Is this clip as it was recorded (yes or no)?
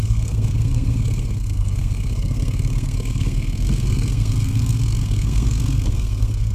no